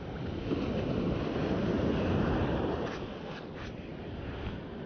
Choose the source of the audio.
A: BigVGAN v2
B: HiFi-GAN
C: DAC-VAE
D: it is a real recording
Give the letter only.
D